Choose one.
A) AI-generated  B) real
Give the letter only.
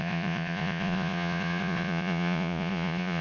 A